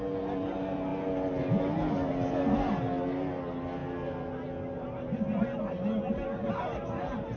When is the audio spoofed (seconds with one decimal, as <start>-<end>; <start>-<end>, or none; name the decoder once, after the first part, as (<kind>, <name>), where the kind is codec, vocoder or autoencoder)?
none

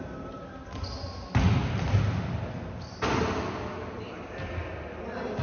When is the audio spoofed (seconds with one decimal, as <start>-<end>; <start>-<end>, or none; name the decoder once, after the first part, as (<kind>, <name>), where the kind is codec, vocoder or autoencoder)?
none

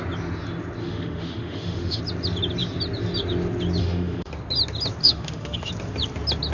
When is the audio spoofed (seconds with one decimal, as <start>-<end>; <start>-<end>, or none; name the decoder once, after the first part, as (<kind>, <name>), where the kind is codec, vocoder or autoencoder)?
0.8-2.0 (autoencoder, DAC-VAE); 3.8-4.3; 5.0-5.7

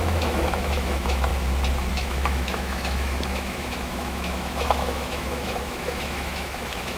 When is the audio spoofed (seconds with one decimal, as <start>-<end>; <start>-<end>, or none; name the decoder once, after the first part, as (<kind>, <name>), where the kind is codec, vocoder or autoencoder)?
0.0-1.3 (autoencoder, DAC-VAE); 1.9-7.0

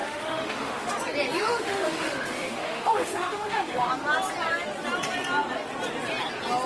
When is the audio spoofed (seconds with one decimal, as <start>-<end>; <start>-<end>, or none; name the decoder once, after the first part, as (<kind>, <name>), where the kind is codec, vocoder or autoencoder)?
0.0-0.9 (autoencoder, DAC-VAE); 1.4-3.9

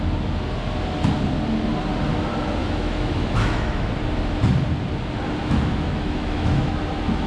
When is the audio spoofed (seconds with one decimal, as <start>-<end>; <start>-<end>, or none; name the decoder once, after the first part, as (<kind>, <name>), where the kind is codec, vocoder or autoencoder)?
2.6-3.9 (autoencoder, DAC-VAE); 5.4-6.8